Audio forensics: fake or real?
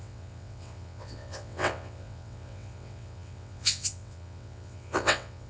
fake